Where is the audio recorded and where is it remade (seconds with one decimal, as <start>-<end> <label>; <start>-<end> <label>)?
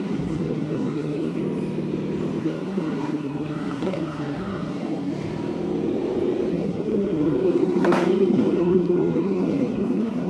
0.0-1.4 remade; 1.4-2.4 recorded; 2.4-5.1 remade; 5.1-6.5 recorded; 6.5-10.3 remade